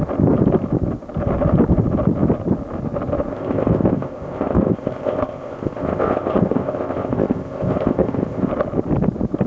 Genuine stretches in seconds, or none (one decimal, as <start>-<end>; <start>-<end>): 0.0-3.3; 8.5-9.5